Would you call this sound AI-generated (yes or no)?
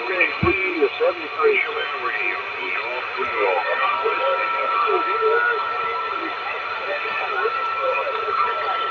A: no